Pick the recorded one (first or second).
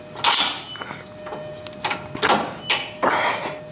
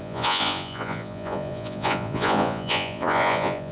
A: first